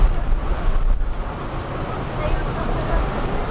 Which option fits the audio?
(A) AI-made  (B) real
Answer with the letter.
B